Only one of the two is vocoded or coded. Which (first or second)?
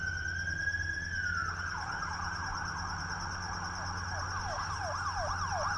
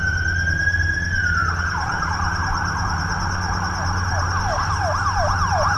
second